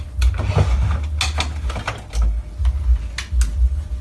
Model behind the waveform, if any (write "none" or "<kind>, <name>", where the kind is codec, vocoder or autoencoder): none